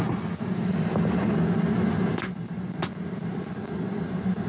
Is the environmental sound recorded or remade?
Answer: recorded